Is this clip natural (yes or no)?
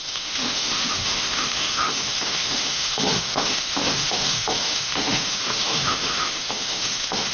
no